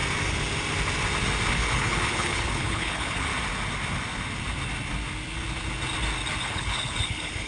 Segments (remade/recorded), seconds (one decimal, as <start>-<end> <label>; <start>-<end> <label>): 0.0-1.5 recorded; 1.5-3.3 remade; 3.3-6.4 recorded; 6.4-7.5 remade